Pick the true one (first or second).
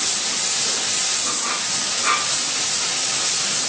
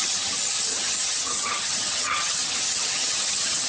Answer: first